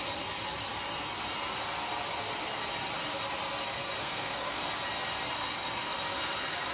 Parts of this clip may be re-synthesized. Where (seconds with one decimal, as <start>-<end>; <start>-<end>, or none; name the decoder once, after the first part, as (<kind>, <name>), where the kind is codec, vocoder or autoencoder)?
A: 4.0-4.6 (codec, SNAC)